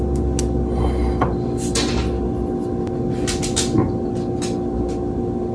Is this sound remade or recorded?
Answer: recorded